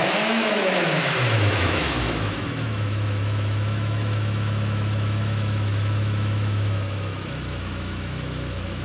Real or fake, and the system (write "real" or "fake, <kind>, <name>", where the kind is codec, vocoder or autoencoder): fake, autoencoder, DAC-VAE